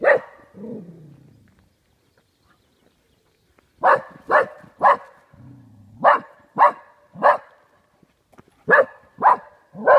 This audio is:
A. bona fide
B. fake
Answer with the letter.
A